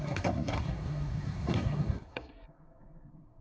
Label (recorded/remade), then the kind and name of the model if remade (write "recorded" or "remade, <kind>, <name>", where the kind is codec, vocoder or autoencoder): remade, codec, SNAC